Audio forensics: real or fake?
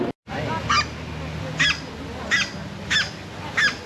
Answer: real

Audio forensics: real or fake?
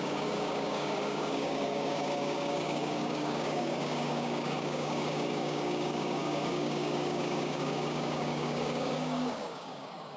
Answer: fake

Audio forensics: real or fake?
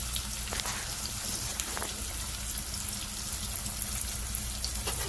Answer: real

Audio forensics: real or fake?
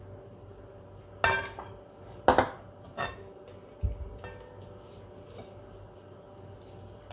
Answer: real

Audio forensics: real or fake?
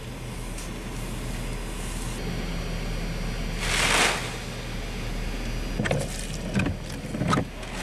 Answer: real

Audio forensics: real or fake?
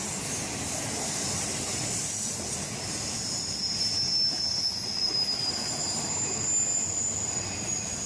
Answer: real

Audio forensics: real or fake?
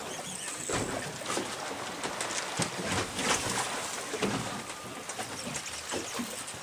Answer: real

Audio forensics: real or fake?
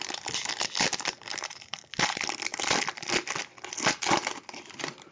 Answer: real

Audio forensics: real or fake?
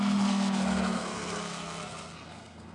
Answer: fake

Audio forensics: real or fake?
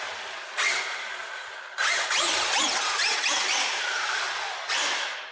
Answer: real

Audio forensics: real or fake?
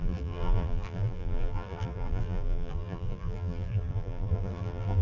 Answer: fake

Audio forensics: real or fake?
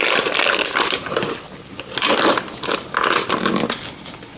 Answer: real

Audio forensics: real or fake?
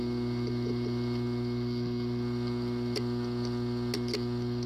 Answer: real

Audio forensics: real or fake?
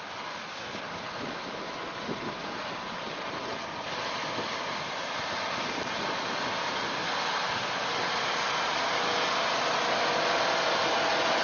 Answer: real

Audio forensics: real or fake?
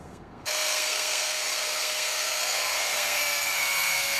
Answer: fake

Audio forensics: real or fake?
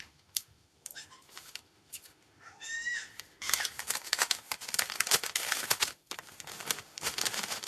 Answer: fake